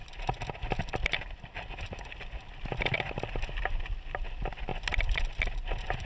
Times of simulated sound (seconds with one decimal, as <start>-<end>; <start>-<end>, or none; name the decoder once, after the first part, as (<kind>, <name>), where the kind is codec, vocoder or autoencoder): 4.7-5.2 (vocoder, BigVGAN v2)